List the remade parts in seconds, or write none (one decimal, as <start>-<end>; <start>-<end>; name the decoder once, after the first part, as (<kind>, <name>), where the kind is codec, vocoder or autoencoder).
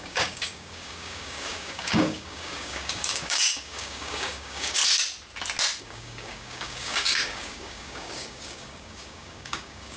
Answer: 0.0-4.8 (codec, DAC); 5.8-10.0